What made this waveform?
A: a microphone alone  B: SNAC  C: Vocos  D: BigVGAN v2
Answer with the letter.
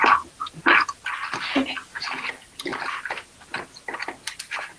A